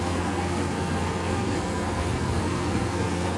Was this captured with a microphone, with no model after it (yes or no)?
no